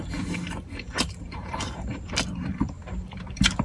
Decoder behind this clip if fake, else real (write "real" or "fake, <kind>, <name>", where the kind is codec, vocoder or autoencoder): fake, vocoder, BigVGAN v2